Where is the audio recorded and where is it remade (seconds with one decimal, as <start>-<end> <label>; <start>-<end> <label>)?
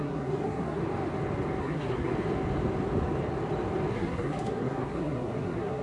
0.0-0.8 remade; 0.8-1.6 recorded; 1.6-2.1 remade; 2.1-3.9 recorded; 3.9-5.8 remade